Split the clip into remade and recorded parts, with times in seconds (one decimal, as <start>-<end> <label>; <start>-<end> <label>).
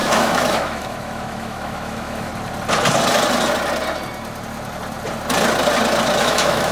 0.0-2.3 remade; 2.3-6.2 recorded; 6.2-6.7 remade